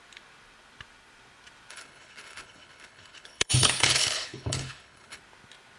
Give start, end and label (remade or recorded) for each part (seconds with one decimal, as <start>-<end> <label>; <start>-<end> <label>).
0.0-1.7 recorded; 1.7-5.2 remade; 5.2-5.8 recorded